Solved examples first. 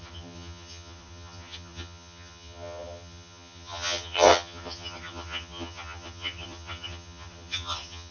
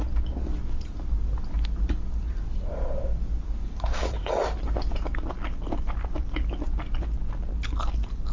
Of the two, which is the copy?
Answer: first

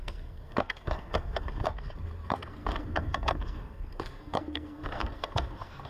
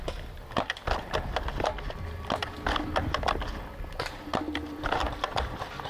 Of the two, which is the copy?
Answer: first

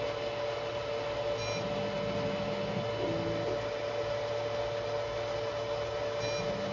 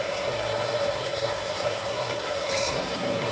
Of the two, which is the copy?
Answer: second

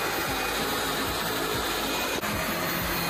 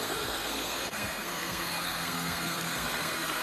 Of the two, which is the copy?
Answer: second